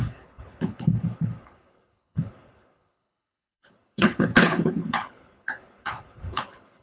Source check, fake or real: fake